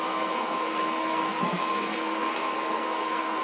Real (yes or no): no